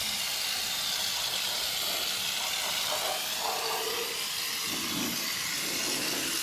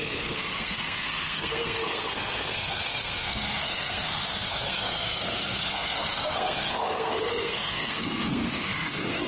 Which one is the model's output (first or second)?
second